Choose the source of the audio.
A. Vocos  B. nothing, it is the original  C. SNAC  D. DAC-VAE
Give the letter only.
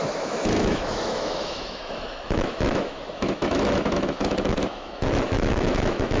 D